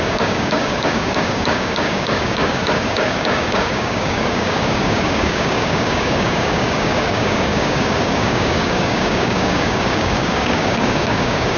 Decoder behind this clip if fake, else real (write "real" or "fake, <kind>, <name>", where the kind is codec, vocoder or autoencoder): fake, codec, DAC